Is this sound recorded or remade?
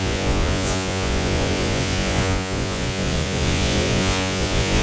remade